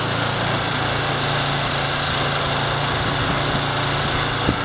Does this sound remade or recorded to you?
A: recorded